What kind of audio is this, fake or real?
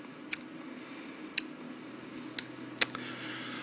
real